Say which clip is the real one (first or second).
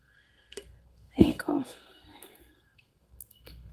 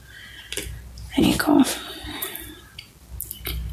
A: second